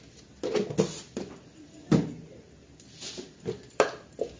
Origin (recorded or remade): recorded